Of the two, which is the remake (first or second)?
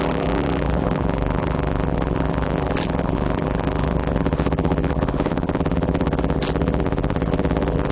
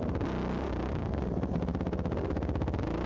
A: first